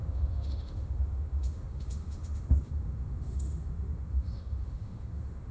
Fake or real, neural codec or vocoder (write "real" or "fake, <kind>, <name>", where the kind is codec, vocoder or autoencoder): fake, autoencoder, DAC-VAE